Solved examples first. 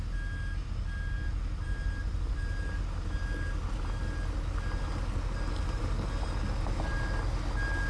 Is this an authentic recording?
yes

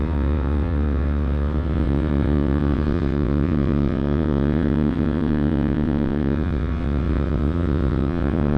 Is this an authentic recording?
no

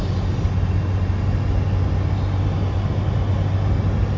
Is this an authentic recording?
yes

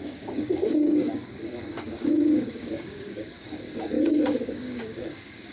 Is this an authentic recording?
no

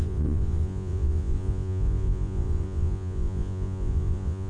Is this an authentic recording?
no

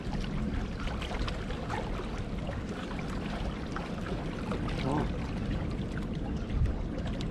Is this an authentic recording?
yes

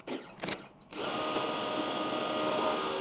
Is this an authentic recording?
yes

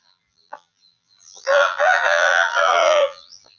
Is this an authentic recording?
no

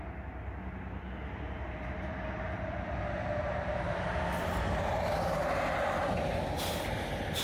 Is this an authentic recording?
yes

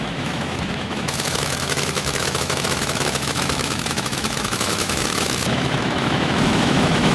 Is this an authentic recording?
no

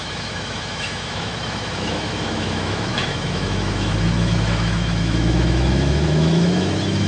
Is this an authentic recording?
no